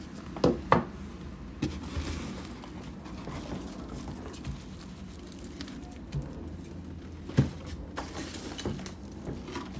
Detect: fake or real real